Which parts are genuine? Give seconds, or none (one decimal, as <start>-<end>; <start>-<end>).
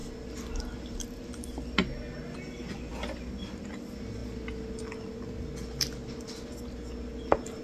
0.0-7.6